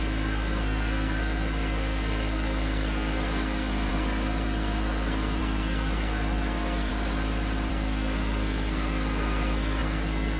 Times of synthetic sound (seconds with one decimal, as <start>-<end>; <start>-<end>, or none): 0.0-6.9; 7.7-10.4